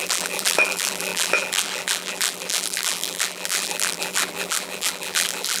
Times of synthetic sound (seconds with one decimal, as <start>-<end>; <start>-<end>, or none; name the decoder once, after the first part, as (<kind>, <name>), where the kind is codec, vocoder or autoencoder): 0.0-5.6 (vocoder, BigVGAN v2)